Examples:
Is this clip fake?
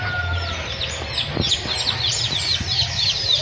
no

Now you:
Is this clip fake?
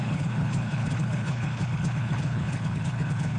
yes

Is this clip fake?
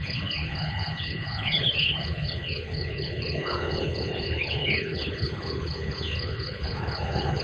yes